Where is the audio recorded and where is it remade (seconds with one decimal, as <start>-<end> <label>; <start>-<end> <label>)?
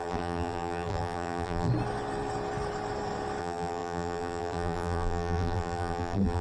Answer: 0.0-1.7 remade; 1.7-3.4 recorded; 3.4-6.4 remade